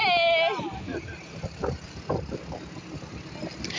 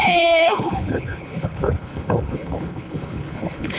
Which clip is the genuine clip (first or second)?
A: first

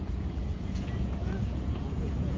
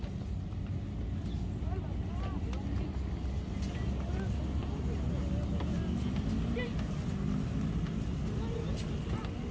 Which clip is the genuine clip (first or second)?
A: second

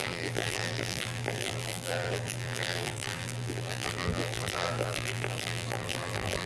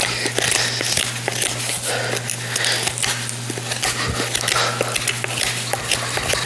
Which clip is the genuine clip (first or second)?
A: second